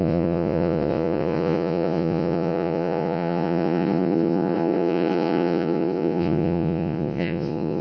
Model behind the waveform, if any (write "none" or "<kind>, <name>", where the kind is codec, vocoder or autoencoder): vocoder, Vocos